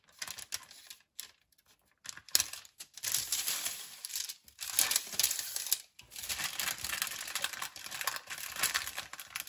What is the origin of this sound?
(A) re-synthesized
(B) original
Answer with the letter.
B